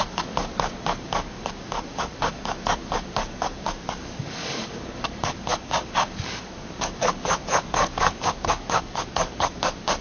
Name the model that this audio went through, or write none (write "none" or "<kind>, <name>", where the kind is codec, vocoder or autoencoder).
codec, DAC